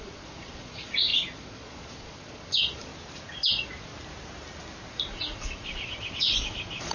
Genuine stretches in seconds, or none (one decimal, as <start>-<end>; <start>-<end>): 2.9-3.5; 3.9-4.9